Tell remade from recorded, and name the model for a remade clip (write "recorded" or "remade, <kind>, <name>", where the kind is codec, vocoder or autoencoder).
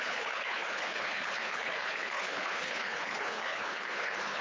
remade, codec, HILCodec